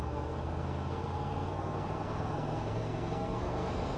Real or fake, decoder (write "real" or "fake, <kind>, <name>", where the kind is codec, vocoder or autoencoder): fake, codec, SNAC